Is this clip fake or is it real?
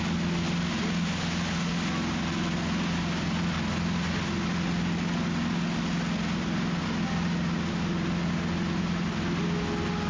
real